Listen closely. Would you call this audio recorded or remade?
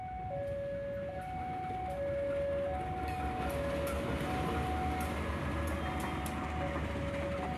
recorded